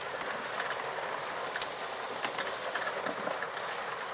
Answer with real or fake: real